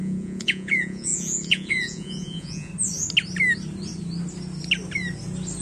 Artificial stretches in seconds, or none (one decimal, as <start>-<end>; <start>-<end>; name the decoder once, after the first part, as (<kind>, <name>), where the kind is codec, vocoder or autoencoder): 0.0-2.7 (vocoder, Vocos)